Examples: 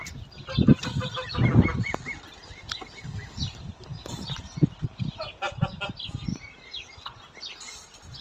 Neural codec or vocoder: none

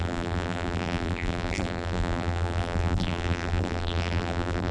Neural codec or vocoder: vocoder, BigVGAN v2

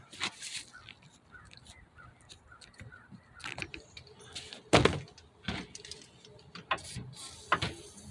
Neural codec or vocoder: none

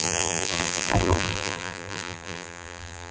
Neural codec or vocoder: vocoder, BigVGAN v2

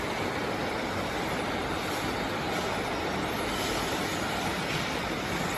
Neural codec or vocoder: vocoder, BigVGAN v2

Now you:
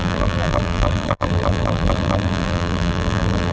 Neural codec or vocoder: vocoder, BigVGAN v2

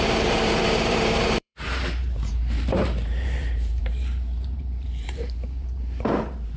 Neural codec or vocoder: vocoder, BigVGAN v2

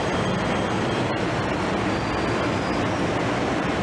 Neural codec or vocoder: none